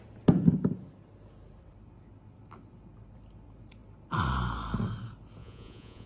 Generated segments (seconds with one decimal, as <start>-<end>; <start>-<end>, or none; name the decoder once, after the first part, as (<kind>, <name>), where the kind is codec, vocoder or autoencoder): 5.4-6.1 (vocoder, Vocos)